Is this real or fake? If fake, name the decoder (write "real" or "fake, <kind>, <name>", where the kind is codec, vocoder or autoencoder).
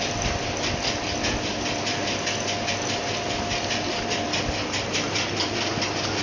real